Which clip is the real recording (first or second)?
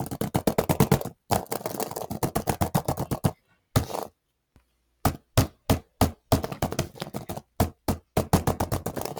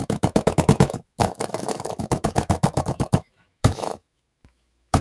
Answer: first